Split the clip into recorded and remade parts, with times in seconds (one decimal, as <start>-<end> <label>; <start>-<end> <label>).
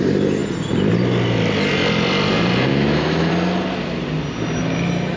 0.0-2.7 recorded; 2.7-3.3 remade; 3.3-5.2 recorded